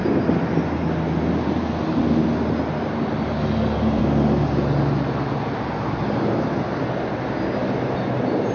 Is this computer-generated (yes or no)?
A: no